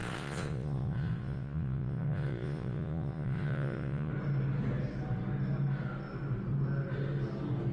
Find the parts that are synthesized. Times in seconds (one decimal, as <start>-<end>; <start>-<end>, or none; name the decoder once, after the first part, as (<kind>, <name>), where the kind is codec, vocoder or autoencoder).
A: 0.0-4.1 (vocoder, Vocos)